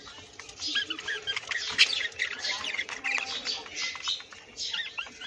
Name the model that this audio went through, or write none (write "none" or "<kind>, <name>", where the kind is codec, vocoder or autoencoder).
none